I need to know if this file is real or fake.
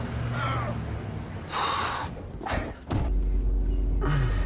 real